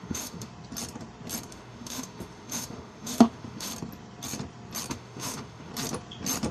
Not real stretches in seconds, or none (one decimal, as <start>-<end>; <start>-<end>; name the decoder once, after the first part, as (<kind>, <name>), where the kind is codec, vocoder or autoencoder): 0.0-0.5 (autoencoder, DAC-VAE); 1.5-3.7; 4.9-5.7